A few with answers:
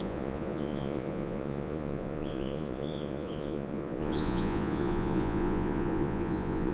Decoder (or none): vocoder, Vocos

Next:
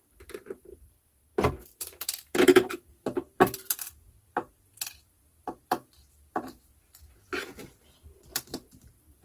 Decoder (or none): vocoder, BigVGAN v2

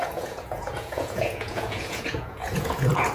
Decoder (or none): vocoder, Vocos